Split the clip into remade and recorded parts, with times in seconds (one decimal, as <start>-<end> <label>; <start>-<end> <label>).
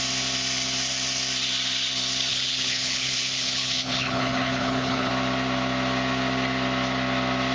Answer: 0.0-2.3 recorded; 2.3-5.1 remade; 5.1-7.5 recorded